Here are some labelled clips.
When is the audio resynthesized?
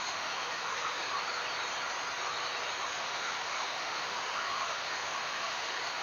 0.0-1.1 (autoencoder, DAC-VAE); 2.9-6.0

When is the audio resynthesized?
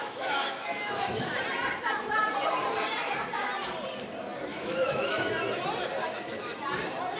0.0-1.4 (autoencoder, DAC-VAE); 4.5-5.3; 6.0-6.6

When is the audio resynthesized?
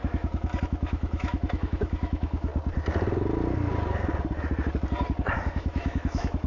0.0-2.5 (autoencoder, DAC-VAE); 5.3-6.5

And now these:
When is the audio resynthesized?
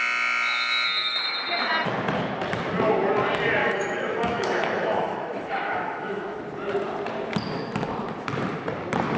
3.6-6.4 (autoencoder, DAC-VAE)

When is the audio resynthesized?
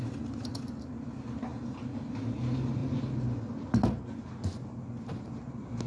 none